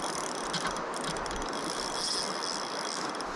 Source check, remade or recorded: recorded